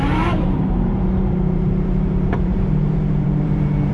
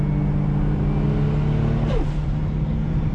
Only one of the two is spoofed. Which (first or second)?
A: first